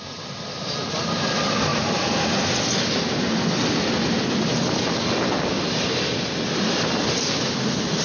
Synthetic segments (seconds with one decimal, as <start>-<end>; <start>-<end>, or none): none

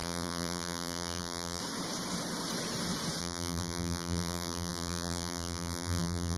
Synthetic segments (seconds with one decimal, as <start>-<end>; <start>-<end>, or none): 0.0-1.6; 3.2-6.4

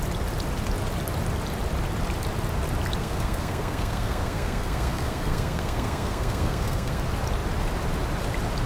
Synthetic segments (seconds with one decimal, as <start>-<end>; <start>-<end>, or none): 3.0-7.0